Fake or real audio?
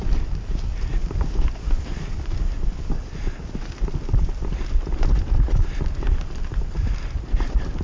real